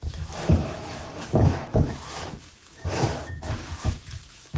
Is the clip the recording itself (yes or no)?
no